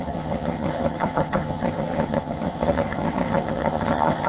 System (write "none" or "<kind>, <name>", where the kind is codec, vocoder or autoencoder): vocoder, HiFi-GAN